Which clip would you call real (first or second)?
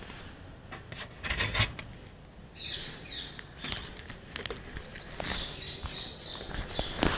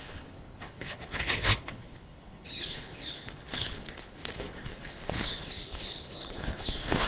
first